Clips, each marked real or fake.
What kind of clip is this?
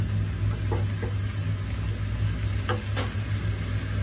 real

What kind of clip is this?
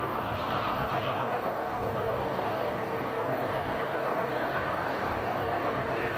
fake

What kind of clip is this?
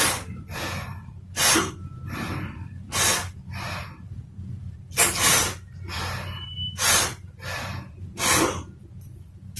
real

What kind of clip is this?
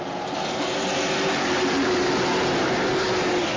real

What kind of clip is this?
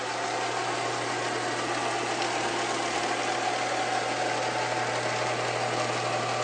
real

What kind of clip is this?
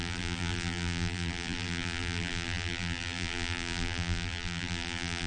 fake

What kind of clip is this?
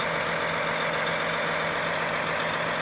real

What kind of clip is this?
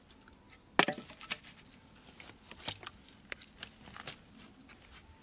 real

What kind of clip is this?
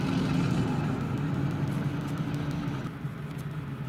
real